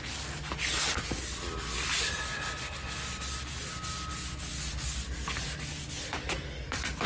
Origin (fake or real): real